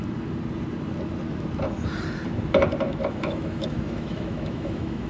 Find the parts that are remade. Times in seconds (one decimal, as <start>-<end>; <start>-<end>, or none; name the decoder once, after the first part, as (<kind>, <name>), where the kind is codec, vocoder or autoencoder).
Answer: 3.1-5.1 (autoencoder, DAC-VAE)